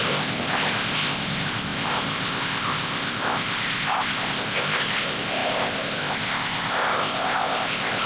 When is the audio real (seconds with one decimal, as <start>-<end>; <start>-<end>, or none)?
none